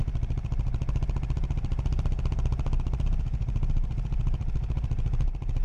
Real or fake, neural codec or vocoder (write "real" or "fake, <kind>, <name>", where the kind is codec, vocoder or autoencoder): real